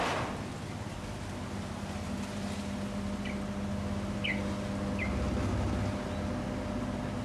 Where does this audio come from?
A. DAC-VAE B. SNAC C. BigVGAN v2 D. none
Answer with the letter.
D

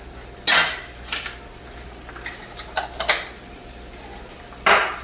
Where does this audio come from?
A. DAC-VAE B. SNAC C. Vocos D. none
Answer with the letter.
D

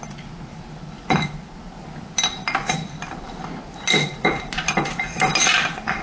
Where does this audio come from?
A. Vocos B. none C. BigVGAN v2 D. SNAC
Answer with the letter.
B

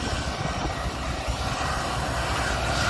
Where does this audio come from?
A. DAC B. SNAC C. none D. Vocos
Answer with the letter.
C